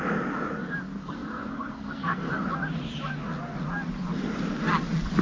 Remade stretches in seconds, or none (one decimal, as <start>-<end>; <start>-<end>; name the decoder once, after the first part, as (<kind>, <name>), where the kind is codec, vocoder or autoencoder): 1.0-2.4 (codec, SNAC)